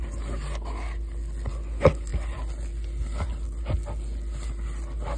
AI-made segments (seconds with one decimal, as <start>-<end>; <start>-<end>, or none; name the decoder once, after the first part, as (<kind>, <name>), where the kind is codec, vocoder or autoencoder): none